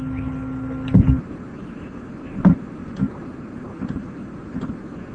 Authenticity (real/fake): real